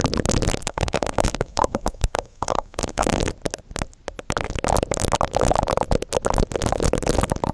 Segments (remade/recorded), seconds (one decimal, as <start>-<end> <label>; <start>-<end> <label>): 0.0-0.6 recorded; 0.6-3.2 remade; 3.2-7.5 recorded